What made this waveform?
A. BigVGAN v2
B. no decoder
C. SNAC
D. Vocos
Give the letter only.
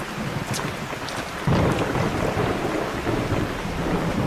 B